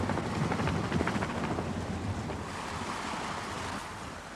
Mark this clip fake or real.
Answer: real